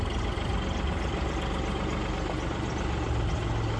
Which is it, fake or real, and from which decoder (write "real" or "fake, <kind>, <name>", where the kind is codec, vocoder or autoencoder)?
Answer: real